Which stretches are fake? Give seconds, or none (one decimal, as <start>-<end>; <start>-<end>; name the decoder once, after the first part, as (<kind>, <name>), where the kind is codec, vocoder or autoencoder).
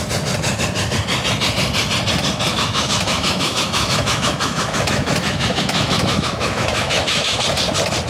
2.5-7.4 (autoencoder, DAC-VAE)